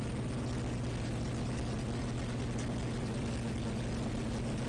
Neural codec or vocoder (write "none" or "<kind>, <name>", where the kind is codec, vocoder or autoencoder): none